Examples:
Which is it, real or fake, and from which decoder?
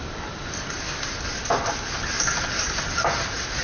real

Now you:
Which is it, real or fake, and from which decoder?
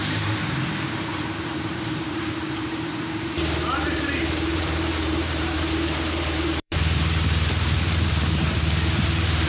fake, vocoder, BigVGAN v2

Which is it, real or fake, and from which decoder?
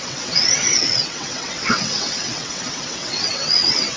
fake, vocoder, WaveNeXt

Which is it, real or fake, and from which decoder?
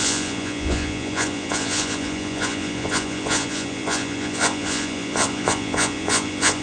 fake, vocoder, Vocos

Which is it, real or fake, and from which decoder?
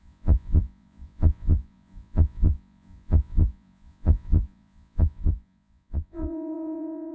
fake, vocoder, Vocos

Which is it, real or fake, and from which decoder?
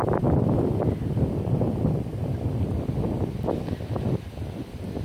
real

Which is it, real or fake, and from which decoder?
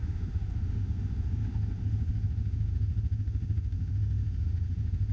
fake, autoencoder, DAC-VAE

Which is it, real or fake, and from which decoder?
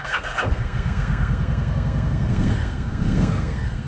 fake, codec, SNAC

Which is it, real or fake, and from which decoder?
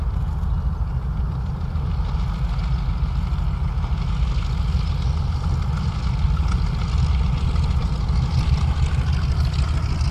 real